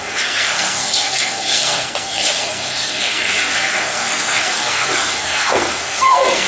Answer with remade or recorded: remade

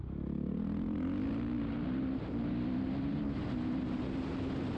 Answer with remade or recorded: recorded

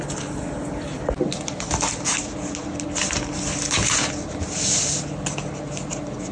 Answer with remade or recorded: recorded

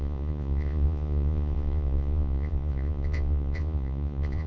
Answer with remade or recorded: remade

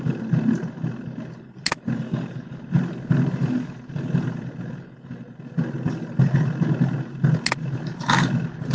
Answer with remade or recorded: recorded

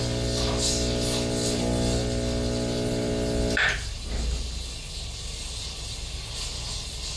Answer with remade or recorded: recorded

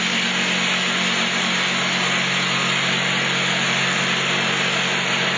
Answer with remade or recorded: recorded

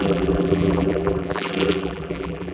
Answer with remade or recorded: remade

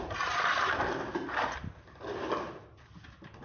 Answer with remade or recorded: recorded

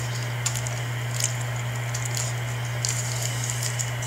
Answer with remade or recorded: recorded